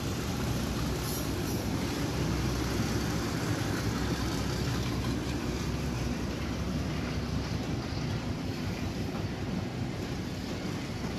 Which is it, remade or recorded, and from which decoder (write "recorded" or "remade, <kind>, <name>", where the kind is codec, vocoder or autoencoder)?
remade, vocoder, BigVGAN v2